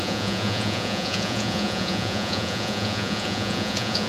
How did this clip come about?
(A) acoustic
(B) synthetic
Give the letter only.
B